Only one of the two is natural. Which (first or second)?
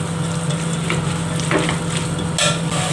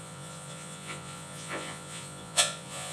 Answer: first